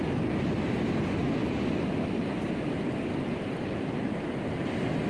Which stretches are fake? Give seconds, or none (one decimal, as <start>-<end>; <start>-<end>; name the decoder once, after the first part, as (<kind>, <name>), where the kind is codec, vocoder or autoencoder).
none

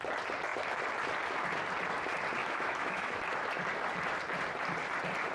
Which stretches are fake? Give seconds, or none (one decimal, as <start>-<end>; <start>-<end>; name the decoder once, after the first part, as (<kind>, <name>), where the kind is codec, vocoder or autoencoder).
2.4-3.2 (autoencoder, DAC-VAE)